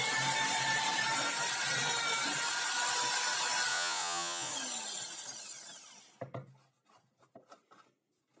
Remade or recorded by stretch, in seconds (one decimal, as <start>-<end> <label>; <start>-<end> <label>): 0.0-3.7 recorded; 3.7-4.5 remade; 4.5-8.4 recorded